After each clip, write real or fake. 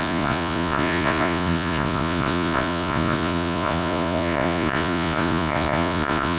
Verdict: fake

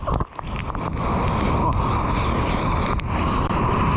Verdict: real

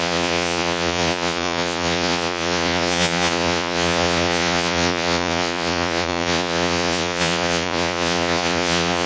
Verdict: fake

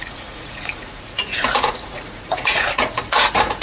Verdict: fake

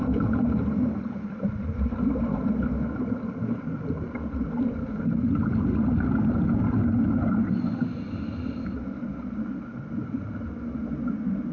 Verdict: real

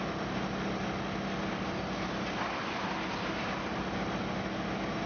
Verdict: real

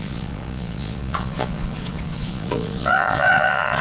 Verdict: fake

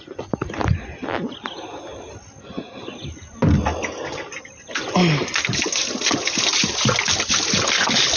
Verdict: real